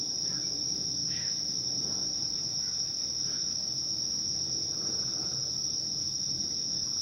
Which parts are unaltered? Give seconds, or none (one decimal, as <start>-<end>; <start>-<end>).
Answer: 0.0-7.0